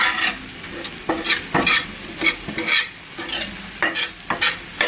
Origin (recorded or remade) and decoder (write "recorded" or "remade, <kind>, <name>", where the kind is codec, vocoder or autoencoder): recorded